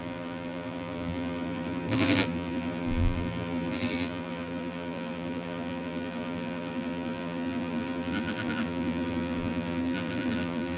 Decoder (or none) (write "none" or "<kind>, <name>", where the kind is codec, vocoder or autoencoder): vocoder, BigVGAN v2